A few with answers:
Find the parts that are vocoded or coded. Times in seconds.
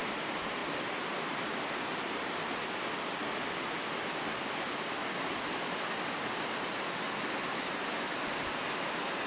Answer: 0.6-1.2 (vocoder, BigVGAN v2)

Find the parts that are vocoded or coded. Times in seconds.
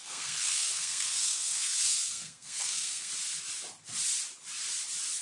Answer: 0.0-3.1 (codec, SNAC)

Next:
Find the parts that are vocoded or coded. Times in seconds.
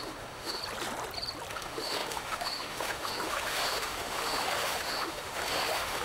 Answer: 0.0-0.6 (autoencoder, DAC-VAE); 1.5-6.0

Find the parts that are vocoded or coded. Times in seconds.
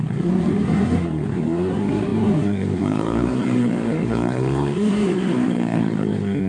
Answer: 0.0-6.5 (codec, SNAC)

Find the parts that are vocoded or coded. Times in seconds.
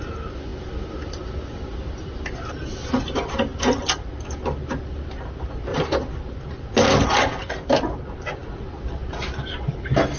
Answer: none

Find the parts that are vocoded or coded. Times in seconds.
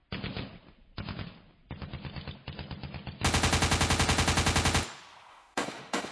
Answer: 5.3-6.1 (autoencoder, DAC-VAE)